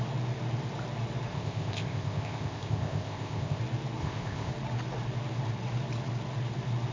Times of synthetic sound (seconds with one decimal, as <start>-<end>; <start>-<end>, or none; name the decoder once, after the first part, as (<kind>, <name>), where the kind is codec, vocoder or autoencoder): 1.3-3.6 (codec, ZipCodec); 4.0-4.5